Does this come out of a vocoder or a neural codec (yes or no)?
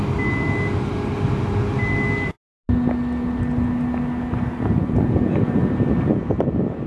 no